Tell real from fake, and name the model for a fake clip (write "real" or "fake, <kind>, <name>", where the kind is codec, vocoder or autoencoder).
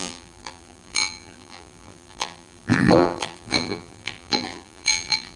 fake, vocoder, BigVGAN v2